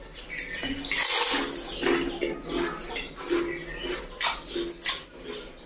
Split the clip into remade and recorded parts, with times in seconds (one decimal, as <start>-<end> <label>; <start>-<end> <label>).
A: 0.0-0.6 remade; 0.6-4.0 recorded; 4.0-5.7 remade